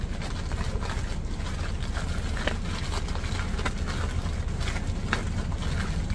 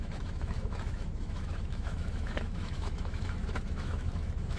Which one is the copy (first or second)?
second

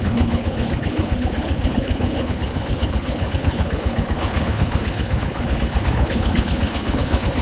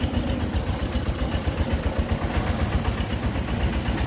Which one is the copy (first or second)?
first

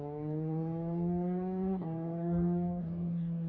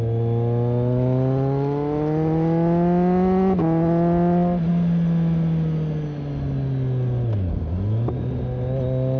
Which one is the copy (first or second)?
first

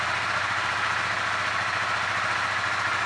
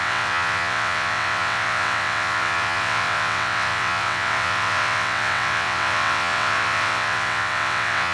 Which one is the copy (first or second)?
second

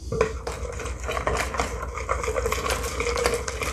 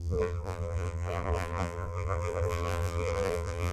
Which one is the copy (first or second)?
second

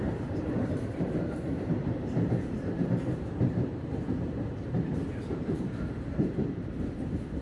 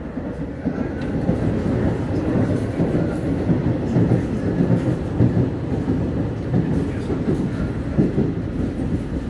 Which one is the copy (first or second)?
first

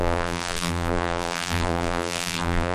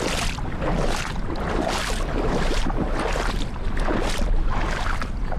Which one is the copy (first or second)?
first